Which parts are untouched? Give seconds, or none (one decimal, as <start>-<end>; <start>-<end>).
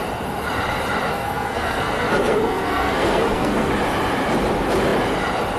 0.0-1.1; 3.7-5.6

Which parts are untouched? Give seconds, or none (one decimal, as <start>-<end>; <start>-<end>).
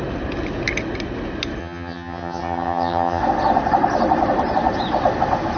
0.0-1.6; 3.2-5.6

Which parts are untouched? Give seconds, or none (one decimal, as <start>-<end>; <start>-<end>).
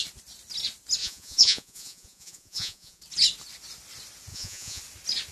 0.0-1.0; 3.0-4.3; 4.8-5.3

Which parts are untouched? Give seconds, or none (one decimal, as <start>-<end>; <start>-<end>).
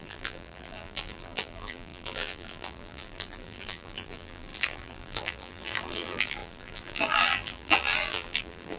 none